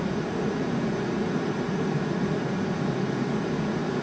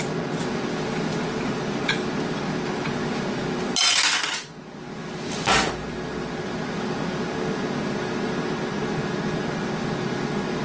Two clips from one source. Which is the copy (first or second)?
first